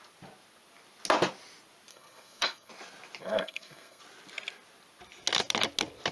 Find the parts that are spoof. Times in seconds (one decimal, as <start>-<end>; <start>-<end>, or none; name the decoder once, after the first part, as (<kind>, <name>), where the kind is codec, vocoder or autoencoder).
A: 1.9-2.7 (codec, SNAC); 3.2-4.0